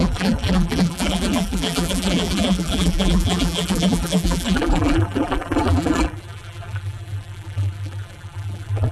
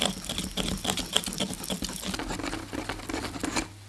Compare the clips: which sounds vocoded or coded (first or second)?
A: first